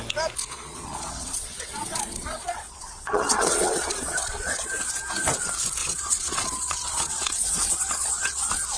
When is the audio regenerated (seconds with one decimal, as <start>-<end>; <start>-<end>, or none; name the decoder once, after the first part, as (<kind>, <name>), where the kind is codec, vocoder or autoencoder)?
0.4-4.7 (vocoder, Vocos); 5.8-8.4